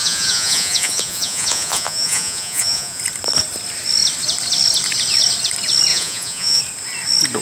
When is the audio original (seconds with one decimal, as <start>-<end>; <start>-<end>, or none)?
3.0-5.9; 6.6-7.4